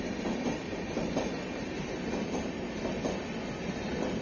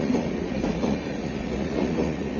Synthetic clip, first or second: second